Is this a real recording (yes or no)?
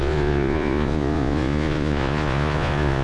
no